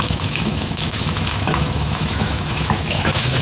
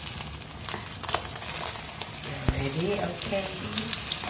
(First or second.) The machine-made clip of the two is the first